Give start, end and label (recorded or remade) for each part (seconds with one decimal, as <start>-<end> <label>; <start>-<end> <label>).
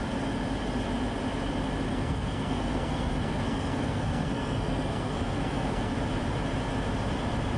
0.0-1.9 recorded; 1.9-5.9 remade; 5.9-7.6 recorded